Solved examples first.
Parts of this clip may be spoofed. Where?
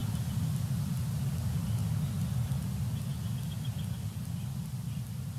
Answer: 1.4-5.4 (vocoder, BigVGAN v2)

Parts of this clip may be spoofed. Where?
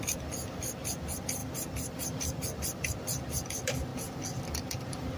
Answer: 1.4-3.5 (vocoder, BigVGAN v2)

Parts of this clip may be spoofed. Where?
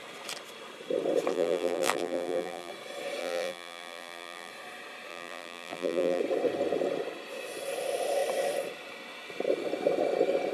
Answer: 1.3-2.7 (vocoder, BigVGAN v2); 3.2-4.5; 5.1-6.2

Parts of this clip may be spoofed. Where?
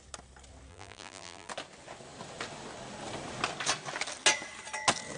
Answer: 0.7-1.5 (vocoder, BigVGAN v2)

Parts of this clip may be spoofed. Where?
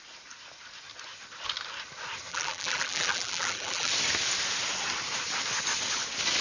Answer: 2.3-3.9 (vocoder, BigVGAN v2)